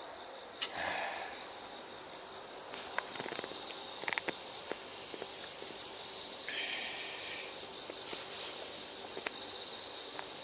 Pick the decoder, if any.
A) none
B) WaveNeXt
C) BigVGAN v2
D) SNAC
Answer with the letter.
A